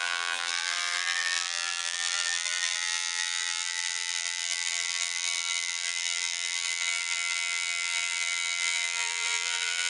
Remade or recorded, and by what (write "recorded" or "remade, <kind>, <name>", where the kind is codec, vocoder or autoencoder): remade, vocoder, BigVGAN v2